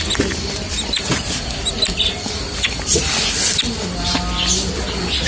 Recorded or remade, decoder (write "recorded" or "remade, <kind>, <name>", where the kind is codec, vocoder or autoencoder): recorded